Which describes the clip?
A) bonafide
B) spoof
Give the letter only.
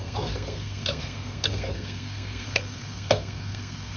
B